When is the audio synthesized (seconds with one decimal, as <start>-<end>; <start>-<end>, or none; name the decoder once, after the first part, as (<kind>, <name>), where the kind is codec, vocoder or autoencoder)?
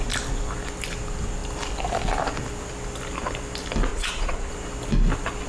3.9-4.5 (vocoder, Vocos)